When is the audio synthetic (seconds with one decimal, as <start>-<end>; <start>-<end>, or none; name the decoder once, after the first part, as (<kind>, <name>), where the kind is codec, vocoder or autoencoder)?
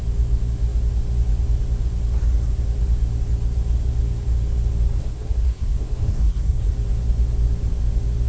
5.0-6.7 (codec, SNAC)